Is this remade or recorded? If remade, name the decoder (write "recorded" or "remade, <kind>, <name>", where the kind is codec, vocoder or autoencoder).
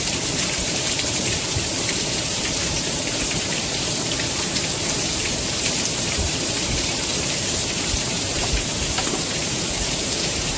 remade, vocoder, BigVGAN v2